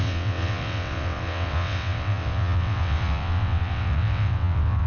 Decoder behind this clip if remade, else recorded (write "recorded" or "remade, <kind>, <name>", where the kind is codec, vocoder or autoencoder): remade, vocoder, WaveNeXt